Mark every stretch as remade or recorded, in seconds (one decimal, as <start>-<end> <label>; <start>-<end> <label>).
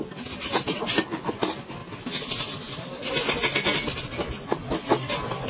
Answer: 0.0-5.5 recorded